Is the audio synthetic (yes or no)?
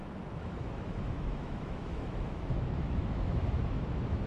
yes